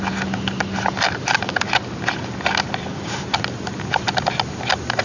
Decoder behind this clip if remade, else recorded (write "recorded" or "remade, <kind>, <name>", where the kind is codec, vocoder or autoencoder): recorded